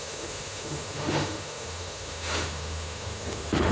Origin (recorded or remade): remade